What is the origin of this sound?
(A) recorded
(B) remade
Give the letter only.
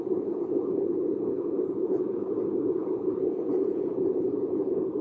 B